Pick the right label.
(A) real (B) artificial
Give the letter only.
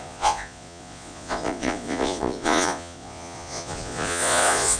B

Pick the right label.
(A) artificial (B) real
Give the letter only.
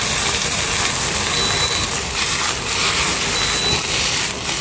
B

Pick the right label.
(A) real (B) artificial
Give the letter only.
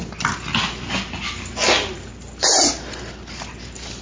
A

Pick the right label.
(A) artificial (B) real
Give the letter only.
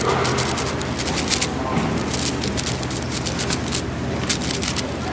B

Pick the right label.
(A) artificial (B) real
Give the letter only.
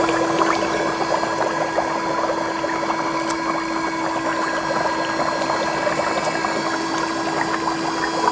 B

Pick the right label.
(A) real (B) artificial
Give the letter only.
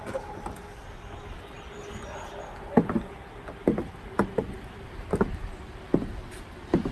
A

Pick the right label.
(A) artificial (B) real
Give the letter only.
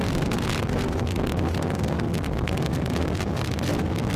A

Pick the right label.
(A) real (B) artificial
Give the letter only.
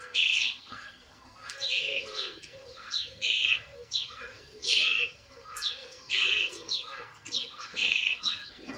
B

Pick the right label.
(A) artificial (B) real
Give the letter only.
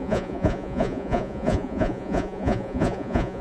A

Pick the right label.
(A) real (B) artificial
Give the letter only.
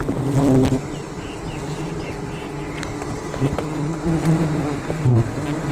A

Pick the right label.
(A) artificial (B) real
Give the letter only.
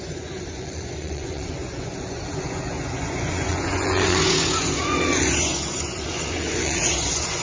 A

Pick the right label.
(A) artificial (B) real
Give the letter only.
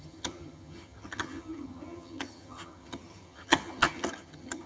A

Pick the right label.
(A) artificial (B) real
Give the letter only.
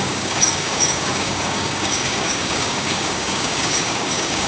A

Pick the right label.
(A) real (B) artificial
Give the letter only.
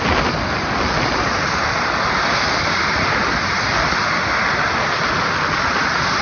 B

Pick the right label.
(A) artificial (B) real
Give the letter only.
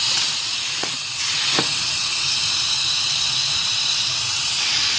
A